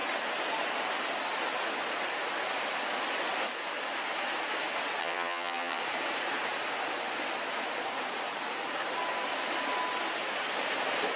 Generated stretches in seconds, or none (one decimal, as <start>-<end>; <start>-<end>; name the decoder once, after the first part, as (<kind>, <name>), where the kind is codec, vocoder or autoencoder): 5.0-5.8 (vocoder, HiFi-GAN)